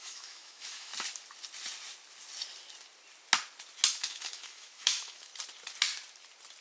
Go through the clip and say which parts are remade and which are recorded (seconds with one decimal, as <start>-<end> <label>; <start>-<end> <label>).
0.0-0.9 remade; 0.9-3.9 recorded; 3.9-5.3 remade; 5.3-6.6 recorded